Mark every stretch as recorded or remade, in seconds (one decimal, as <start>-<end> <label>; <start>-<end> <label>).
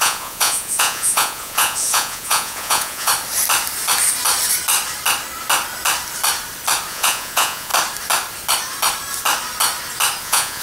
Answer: 0.0-3.1 remade; 3.1-6.9 recorded; 6.9-7.7 remade; 7.7-10.2 recorded; 10.2-10.6 remade